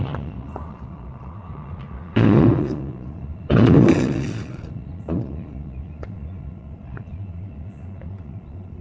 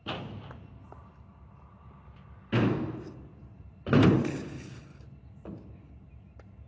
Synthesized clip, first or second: first